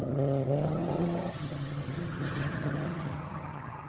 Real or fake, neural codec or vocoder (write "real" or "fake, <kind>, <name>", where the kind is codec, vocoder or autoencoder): fake, vocoder, HiFi-GAN